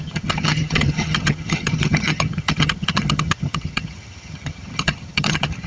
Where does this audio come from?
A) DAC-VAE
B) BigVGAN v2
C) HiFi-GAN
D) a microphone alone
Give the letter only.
C